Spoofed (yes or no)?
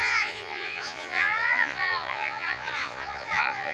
yes